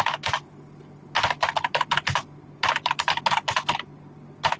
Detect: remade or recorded recorded